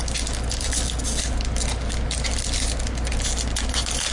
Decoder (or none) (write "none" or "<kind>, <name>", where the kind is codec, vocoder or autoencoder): none